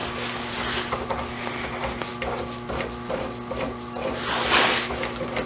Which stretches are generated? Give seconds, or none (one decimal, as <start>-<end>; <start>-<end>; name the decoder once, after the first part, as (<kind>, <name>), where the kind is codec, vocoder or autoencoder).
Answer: none